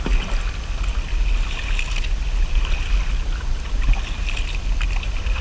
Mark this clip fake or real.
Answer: real